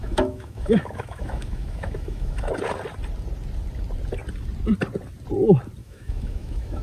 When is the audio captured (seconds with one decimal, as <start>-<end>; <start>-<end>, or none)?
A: 2.5-5.8